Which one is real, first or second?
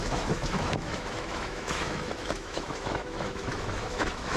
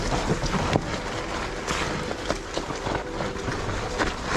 second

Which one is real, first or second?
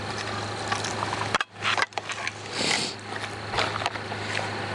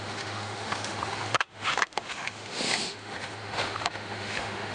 first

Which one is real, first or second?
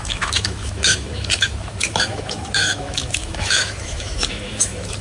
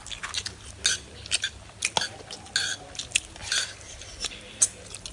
second